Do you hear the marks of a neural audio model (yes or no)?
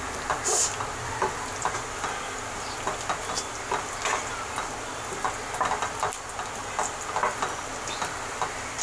no